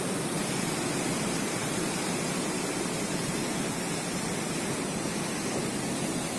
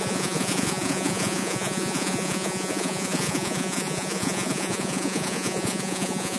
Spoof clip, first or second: second